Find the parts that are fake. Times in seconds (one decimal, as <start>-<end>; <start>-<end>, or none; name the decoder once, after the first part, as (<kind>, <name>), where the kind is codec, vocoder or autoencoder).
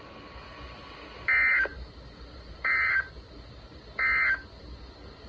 1.7-3.3 (vocoder, BigVGAN v2)